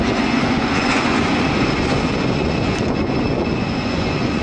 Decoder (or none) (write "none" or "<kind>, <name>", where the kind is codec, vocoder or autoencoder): vocoder, Vocos